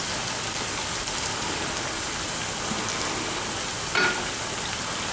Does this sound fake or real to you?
real